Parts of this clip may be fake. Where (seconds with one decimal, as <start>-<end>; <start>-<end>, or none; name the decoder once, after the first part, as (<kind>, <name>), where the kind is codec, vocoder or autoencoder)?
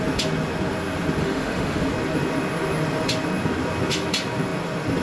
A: 1.2-1.9 (autoencoder, DAC-VAE)